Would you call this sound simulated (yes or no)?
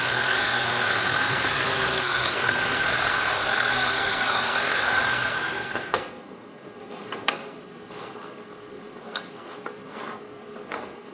yes